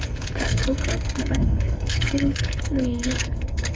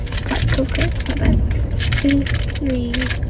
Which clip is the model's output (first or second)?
first